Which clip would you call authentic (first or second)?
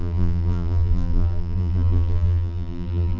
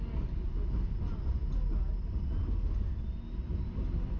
second